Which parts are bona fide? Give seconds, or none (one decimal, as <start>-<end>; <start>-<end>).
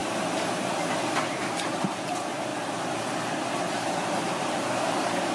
2.5-3.6